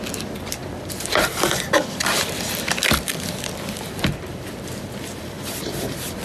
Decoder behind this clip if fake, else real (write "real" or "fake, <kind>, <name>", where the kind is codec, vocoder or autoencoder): fake, vocoder, BigVGAN v2